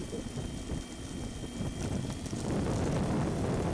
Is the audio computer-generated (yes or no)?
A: no